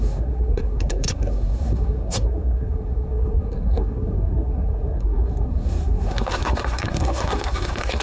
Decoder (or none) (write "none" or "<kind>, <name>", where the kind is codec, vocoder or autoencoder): codec, SNAC